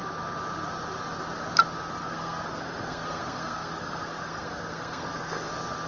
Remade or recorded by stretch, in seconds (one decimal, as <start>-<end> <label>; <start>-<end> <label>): 0.0-2.0 recorded; 2.0-5.5 remade; 5.5-5.9 recorded